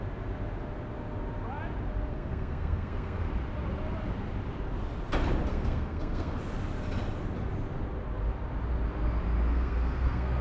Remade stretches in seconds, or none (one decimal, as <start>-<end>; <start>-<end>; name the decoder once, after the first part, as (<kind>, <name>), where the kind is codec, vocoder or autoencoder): 2.1-3.3 (codec, SNAC); 5.5-6.4; 9.5-10.4